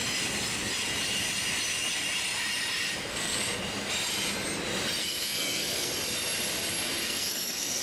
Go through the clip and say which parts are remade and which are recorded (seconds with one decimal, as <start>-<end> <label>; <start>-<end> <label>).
0.0-3.1 recorded; 3.1-3.5 remade; 3.5-5.0 recorded; 5.0-5.9 remade; 5.9-7.0 recorded; 7.0-7.8 remade